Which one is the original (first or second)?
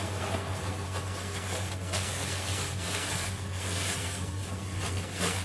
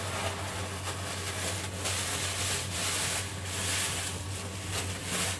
second